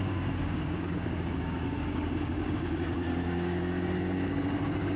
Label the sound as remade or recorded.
remade